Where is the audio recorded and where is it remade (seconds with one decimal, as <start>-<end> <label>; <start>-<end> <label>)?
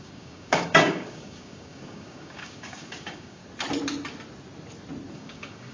0.0-3.4 remade; 3.4-5.1 recorded; 5.1-5.7 remade